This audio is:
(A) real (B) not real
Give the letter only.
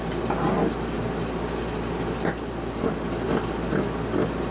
A